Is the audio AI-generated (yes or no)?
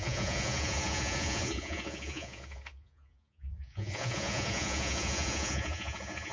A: yes